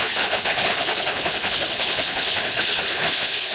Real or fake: fake